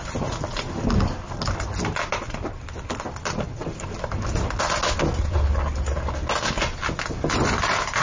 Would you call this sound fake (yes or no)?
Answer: no